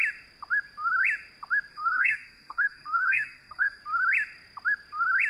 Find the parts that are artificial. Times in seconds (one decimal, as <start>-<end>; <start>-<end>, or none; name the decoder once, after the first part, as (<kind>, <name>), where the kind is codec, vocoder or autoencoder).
1.7-3.8 (codec, SNAC)